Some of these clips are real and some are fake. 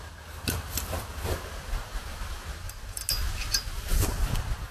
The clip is real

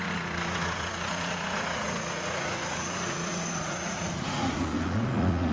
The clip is fake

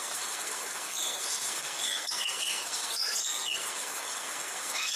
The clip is fake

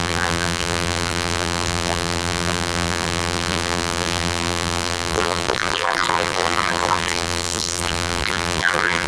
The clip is fake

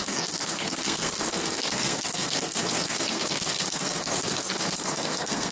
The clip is fake